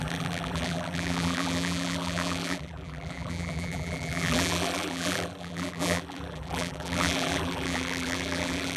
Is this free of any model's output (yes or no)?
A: no